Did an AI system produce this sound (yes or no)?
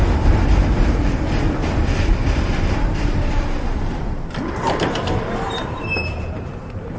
yes